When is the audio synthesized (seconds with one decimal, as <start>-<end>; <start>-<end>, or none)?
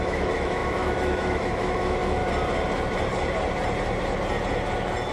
0.0-2.2